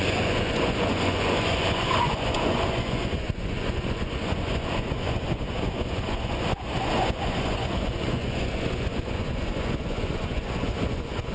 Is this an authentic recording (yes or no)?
no